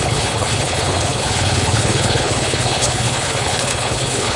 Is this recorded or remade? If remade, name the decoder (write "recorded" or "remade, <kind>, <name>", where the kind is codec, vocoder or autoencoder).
remade, codec, HILCodec